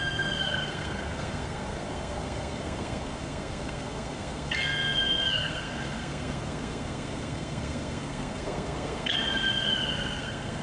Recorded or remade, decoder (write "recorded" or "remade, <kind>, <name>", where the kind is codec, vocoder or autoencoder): remade, codec, SNAC